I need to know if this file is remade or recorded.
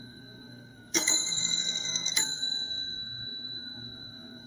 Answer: remade